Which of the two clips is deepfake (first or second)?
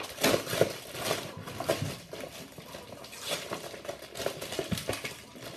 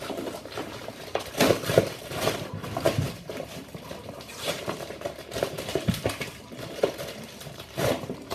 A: second